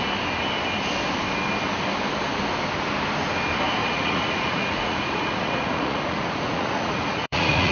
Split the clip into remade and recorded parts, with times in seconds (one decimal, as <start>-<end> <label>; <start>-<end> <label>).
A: 0.0-3.8 recorded; 3.8-7.7 remade